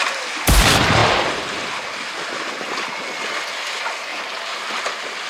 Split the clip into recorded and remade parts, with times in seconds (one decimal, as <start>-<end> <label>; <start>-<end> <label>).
0.0-4.1 recorded; 4.1-4.8 remade; 4.8-5.3 recorded

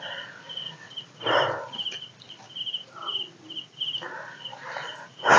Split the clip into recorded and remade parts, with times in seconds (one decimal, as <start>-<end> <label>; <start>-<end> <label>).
0.0-5.4 recorded

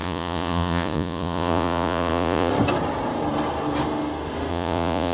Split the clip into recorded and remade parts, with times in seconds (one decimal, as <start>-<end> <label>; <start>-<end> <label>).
0.0-2.5 remade; 2.5-4.5 recorded; 4.5-5.1 remade

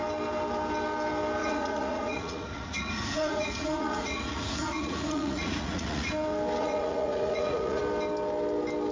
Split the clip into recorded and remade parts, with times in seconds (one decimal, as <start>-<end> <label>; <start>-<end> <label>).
0.0-1.4 recorded; 1.4-6.1 remade; 6.1-6.6 recorded; 6.6-7.8 remade; 7.8-8.9 recorded

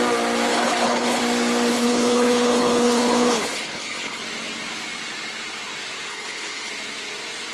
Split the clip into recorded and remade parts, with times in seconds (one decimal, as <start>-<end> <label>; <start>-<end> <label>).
0.0-0.5 recorded; 0.5-1.2 remade; 1.2-1.7 recorded; 1.7-4.2 remade; 4.2-6.1 recorded; 6.1-6.7 remade; 6.7-7.5 recorded

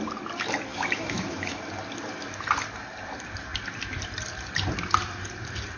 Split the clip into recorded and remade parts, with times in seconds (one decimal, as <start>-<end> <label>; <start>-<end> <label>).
0.0-0.7 recorded; 0.7-1.6 remade; 1.6-5.8 recorded